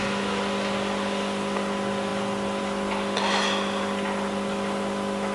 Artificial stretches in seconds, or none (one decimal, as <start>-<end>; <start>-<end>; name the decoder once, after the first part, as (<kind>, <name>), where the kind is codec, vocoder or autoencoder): none